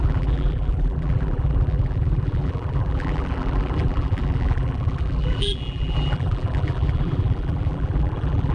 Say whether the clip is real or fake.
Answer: fake